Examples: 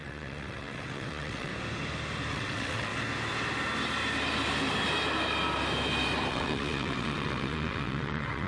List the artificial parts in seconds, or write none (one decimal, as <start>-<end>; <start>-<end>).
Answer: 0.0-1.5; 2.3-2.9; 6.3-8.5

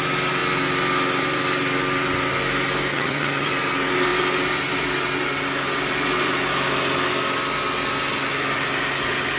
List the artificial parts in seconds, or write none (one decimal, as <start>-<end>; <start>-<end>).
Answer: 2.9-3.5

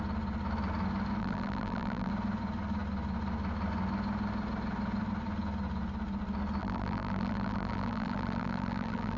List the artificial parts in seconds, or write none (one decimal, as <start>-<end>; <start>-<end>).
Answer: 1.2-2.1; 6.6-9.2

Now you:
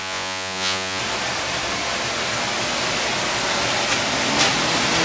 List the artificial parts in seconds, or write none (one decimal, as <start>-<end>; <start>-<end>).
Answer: 0.0-1.0

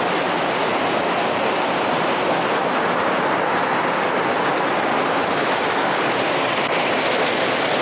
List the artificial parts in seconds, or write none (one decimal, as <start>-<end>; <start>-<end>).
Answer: none

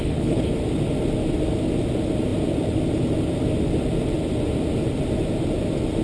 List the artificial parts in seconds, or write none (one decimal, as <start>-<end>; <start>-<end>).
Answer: 0.0-0.5

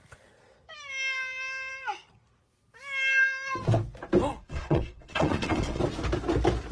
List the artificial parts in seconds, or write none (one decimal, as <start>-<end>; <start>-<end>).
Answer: 4.3-5.8

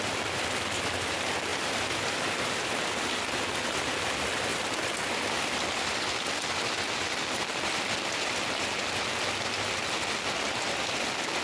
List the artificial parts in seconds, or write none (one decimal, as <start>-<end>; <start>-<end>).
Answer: 1.5-2.8